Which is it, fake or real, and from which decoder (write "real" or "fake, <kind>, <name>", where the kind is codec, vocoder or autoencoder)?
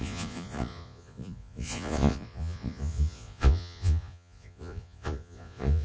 fake, vocoder, Vocos